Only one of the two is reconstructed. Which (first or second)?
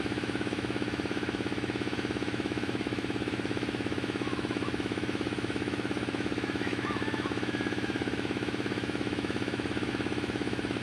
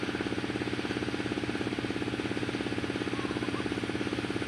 first